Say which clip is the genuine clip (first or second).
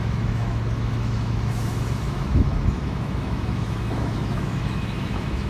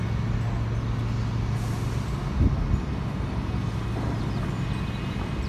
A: second